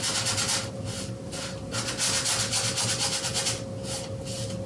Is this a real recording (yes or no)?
yes